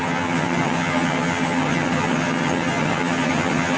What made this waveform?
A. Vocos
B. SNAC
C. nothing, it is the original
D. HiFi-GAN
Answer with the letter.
D